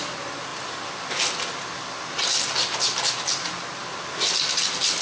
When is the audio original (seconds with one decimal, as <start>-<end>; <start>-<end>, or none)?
0.0-5.0